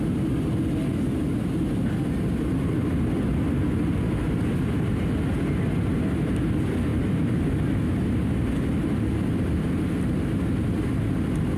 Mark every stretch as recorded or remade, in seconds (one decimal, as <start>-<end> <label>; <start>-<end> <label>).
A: 0.0-6.9 recorded; 6.9-7.7 remade; 7.7-11.6 recorded